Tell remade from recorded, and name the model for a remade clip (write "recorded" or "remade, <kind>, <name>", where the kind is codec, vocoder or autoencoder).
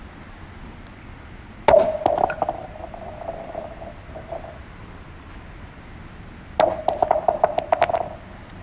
recorded